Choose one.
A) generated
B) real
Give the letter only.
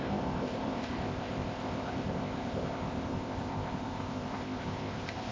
A